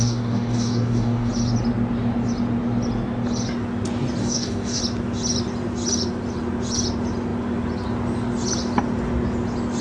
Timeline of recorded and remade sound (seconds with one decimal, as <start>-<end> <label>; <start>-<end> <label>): 0.0-1.3 remade; 1.3-4.2 recorded; 4.2-4.8 remade; 4.8-9.8 recorded